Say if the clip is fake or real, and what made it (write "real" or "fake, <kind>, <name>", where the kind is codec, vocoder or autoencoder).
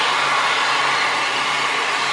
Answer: real